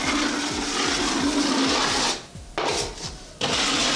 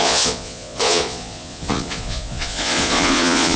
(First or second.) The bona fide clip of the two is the first